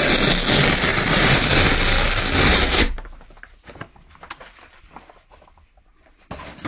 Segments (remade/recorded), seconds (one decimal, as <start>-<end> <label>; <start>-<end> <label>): 0.0-0.9 recorded; 0.9-1.5 remade; 1.5-2.5 recorded; 2.5-4.2 remade; 4.2-6.7 recorded